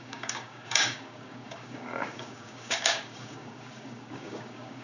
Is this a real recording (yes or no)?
no